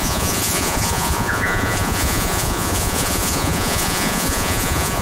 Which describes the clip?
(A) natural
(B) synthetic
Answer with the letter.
B